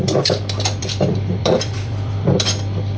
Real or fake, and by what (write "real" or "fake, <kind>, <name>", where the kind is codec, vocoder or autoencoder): fake, vocoder, BigVGAN v2